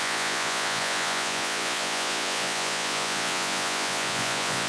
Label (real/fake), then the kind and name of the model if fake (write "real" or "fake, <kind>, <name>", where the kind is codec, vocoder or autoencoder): fake, vocoder, Vocos